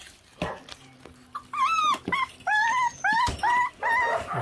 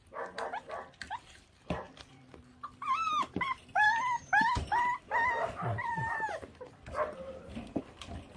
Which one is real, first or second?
first